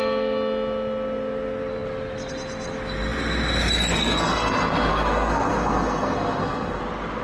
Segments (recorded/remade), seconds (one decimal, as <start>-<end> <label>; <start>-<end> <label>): 0.0-4.0 recorded; 4.0-4.5 remade; 4.5-4.9 recorded; 4.9-6.8 remade; 6.8-7.2 recorded